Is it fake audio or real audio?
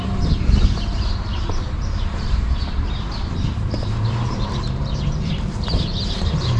fake